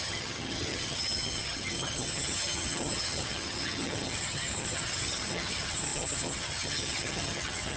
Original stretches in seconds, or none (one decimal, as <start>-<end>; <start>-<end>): none